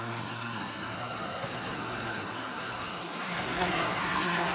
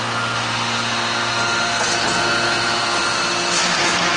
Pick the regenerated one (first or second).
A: first